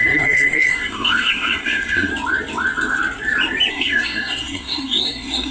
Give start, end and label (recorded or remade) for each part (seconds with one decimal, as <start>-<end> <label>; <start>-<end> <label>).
0.0-2.1 remade; 2.1-3.7 recorded; 3.7-5.5 remade